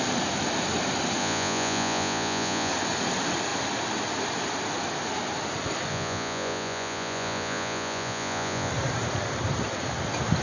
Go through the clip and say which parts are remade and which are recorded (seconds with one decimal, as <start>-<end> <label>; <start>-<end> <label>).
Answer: 0.0-1.2 recorded; 1.2-2.7 remade; 2.7-5.9 recorded; 5.9-8.7 remade; 8.7-10.4 recorded